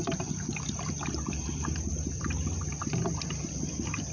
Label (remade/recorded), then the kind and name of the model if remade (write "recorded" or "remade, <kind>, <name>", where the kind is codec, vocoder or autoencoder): recorded